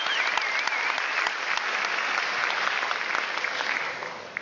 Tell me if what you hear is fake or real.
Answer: real